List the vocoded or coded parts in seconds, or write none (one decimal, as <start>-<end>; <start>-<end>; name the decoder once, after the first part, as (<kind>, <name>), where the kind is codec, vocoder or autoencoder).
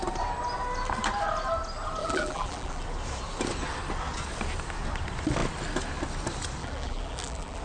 2.0-2.8 (vocoder, BigVGAN v2); 6.6-7.6